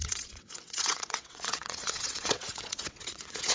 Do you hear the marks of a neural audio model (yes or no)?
yes